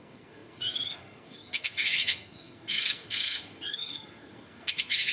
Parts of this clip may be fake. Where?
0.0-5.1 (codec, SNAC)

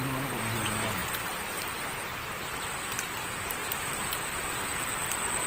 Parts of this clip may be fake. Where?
none

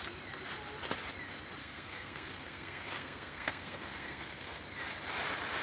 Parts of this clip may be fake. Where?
1.6-4.6 (codec, SNAC)

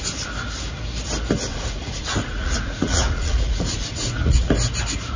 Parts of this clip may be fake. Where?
1.5-4.5 (vocoder, Vocos)

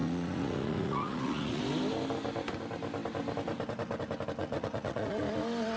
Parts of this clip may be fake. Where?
0.0-1.6 (vocoder, Vocos); 4.4-5.2

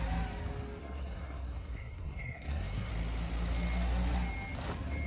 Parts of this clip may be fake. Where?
0.8-2.9 (codec, SNAC)

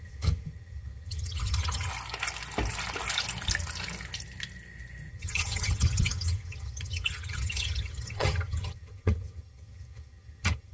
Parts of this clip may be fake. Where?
0.0-1.9 (vocoder, HiFi-GAN); 5.1-10.7

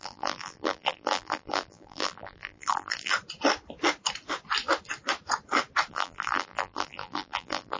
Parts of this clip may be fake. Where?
0.0-3.1 (vocoder, BigVGAN v2); 5.9-7.8